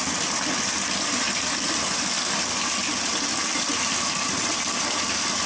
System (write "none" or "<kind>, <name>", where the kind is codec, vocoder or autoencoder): none